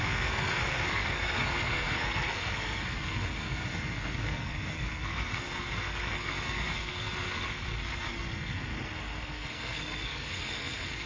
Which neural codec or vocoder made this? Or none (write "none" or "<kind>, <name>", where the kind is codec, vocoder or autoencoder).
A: codec, SNAC